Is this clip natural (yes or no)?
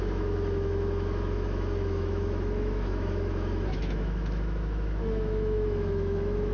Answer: no